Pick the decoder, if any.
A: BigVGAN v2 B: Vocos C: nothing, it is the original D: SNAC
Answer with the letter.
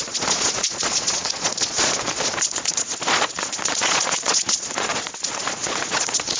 B